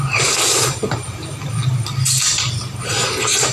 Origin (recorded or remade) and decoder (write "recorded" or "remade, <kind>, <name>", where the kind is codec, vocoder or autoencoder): remade, vocoder, BigVGAN v2